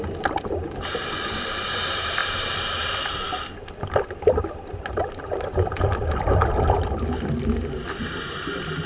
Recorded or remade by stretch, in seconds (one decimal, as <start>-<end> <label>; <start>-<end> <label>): 0.0-8.9 recorded